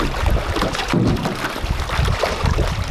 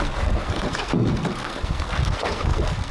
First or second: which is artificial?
second